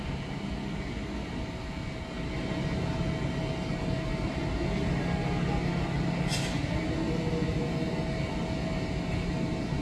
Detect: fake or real real